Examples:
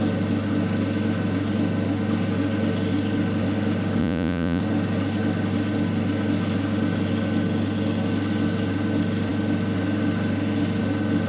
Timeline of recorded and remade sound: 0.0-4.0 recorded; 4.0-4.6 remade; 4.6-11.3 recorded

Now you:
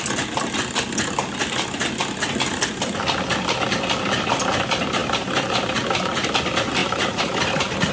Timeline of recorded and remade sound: 0.0-6.8 recorded; 6.8-7.9 remade

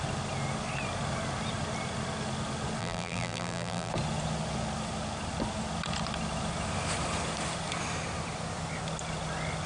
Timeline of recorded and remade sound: 0.0-2.8 recorded; 2.8-3.9 remade; 3.9-9.7 recorded

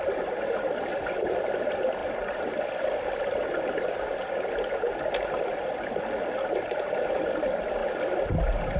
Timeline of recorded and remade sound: 0.0-8.8 recorded

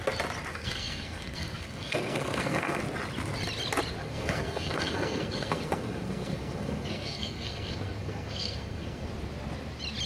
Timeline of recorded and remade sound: 0.0-0.5 recorded; 0.5-2.8 remade; 2.8-4.0 recorded; 4.0-9.1 remade; 9.1-10.1 recorded

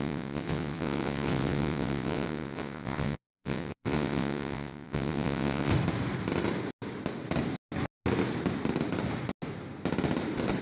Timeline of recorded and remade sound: 0.0-5.7 remade; 5.7-10.6 recorded

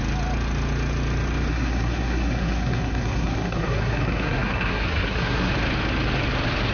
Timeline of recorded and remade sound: 0.0-1.5 recorded; 1.5-5.5 remade; 5.5-6.7 recorded

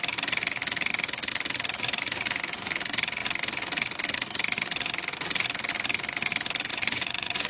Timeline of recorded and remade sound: 0.0-6.7 recorded; 6.7-7.5 remade